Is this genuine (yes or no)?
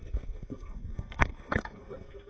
no